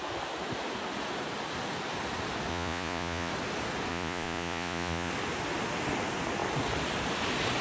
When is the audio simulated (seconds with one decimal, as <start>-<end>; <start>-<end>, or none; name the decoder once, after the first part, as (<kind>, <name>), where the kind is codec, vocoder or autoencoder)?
2.5-3.3 (vocoder, Vocos); 3.9-5.1